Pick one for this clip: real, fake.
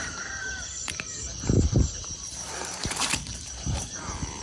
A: fake